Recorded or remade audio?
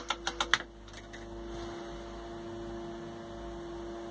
recorded